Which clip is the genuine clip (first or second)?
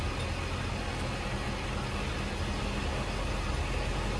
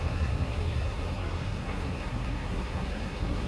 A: first